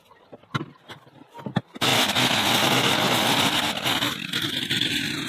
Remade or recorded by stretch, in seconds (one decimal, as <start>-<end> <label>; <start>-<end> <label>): 0.0-1.9 remade; 1.9-5.3 recorded